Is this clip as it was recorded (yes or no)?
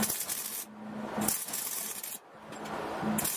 yes